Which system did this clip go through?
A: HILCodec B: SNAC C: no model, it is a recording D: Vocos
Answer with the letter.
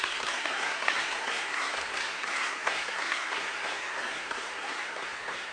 B